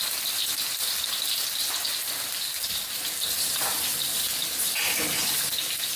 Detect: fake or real real